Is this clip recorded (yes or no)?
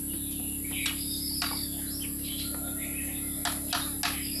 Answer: yes